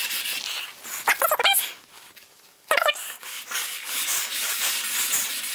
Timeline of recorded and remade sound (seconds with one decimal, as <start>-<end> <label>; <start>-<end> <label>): 0.0-1.5 recorded; 1.5-4.8 remade; 4.8-5.5 recorded